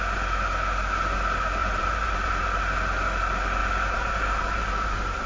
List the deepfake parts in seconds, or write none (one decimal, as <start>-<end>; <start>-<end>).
1.6-2.6; 3.6-5.3